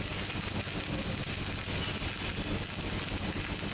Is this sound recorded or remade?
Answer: recorded